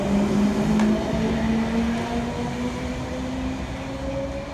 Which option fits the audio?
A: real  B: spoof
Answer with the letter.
A